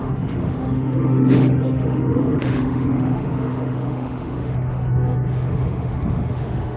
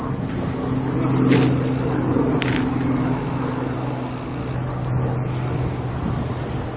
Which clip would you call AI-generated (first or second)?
first